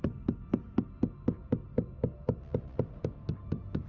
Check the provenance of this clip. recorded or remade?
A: recorded